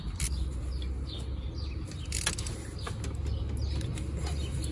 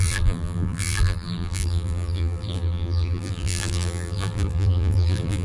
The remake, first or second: second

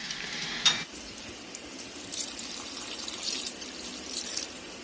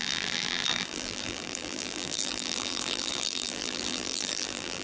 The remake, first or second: second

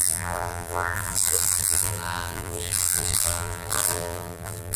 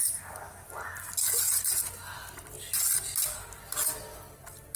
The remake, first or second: first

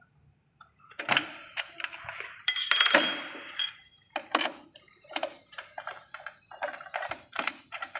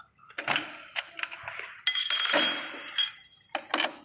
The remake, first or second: first